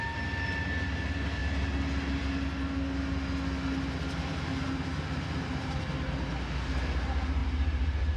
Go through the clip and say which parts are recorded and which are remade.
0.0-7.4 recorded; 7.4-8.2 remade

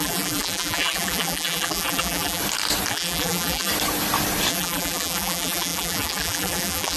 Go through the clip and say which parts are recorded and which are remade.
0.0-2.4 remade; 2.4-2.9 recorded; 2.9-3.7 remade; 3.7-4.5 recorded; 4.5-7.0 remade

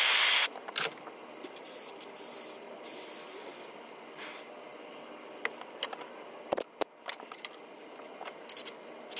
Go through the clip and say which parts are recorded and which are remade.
0.0-9.2 recorded

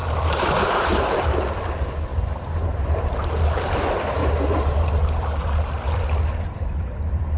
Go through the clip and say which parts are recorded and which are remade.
0.0-1.5 remade; 1.5-2.1 recorded; 2.1-3.7 remade; 3.7-4.2 recorded; 4.2-4.9 remade; 4.9-7.4 recorded

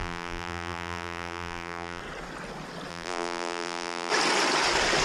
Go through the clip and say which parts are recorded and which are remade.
0.0-2.0 remade; 2.0-2.9 recorded; 2.9-4.1 remade; 4.1-5.0 recorded